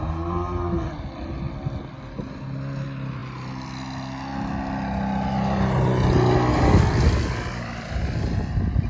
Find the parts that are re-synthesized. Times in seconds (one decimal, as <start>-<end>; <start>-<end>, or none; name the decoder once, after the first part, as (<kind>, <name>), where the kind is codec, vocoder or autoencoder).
none